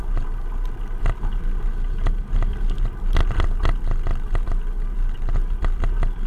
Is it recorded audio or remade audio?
recorded